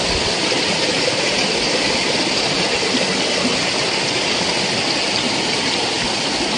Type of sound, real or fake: real